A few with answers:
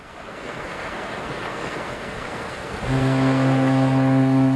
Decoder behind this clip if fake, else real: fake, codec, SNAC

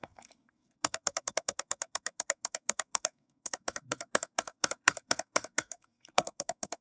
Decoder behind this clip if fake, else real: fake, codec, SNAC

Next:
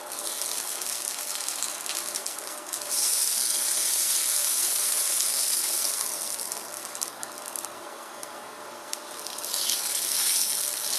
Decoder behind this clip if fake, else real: fake, codec, SNAC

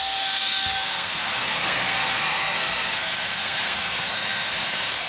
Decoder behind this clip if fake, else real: fake, codec, SNAC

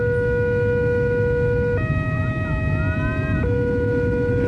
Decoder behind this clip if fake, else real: real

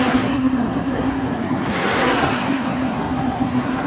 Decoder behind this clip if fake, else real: fake, codec, SNAC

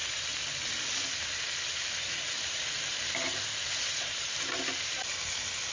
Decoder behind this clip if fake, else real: real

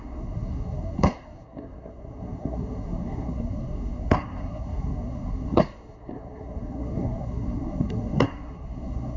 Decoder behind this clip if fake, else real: fake, codec, SNAC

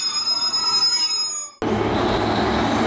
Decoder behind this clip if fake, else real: real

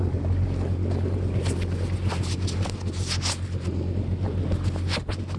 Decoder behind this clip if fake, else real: real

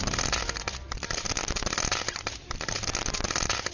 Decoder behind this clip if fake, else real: real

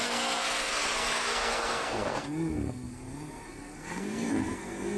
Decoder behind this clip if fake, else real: fake, codec, SNAC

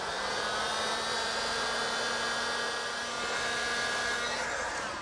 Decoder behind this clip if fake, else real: real